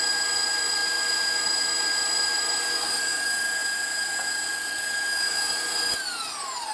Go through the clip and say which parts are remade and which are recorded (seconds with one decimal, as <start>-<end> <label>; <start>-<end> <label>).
0.0-6.7 recorded